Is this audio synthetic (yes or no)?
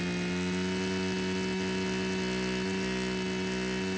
no